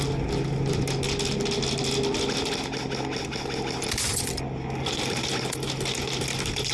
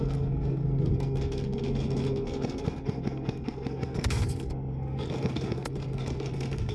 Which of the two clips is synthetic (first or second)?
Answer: second